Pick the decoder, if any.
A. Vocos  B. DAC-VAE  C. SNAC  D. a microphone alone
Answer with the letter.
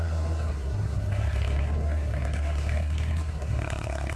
C